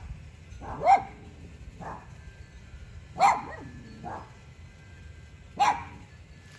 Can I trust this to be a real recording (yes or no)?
yes